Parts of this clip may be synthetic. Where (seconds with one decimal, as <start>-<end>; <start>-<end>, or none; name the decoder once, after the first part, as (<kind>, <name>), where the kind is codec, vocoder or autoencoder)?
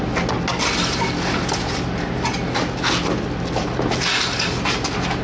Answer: none